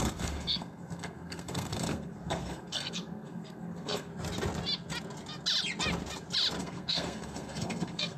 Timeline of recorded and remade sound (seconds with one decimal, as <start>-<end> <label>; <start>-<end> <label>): 0.0-4.1 remade; 4.1-6.6 recorded; 6.6-8.2 remade